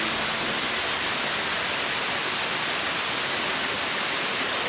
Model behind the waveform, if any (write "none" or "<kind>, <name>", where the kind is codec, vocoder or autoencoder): none